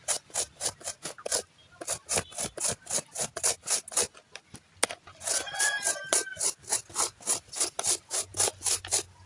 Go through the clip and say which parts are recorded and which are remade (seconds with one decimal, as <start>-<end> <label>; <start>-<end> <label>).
0.0-9.3 recorded